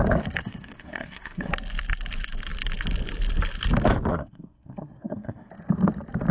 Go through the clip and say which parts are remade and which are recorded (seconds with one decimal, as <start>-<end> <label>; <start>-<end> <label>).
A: 0.0-0.4 recorded; 0.4-1.5 remade; 1.5-4.1 recorded; 4.1-5.5 remade; 5.5-6.3 recorded